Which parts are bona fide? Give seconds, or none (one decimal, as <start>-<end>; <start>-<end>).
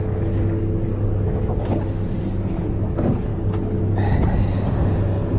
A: 3.3-5.4